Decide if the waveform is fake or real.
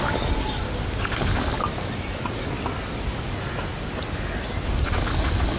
real